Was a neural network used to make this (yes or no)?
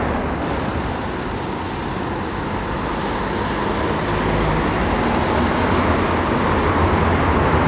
no